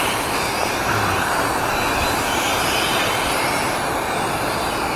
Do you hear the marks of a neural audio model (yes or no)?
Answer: no